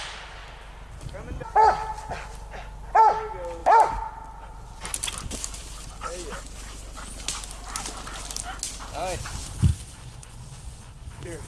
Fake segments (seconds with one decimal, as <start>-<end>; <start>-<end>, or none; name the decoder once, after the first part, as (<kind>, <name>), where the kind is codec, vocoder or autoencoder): 9.7-11.5 (vocoder, Vocos)